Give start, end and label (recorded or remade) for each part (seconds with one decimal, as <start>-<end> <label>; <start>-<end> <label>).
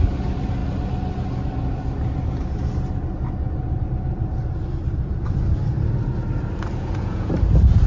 0.0-6.8 recorded; 6.8-7.3 remade; 7.3-7.9 recorded